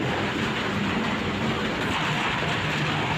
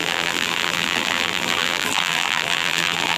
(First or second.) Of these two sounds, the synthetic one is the second